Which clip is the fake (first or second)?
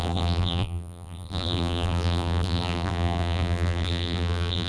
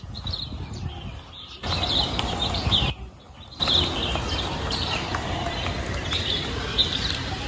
first